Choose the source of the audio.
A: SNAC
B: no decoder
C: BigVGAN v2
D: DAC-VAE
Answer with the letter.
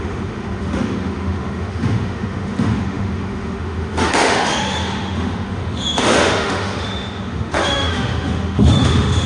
D